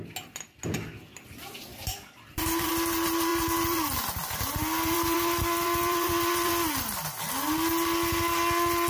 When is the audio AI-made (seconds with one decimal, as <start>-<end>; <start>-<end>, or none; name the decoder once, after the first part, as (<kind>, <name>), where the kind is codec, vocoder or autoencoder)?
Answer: 1.7-2.7 (vocoder, BigVGAN v2); 3.3-6.5